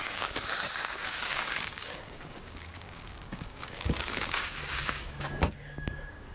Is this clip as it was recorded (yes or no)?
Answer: no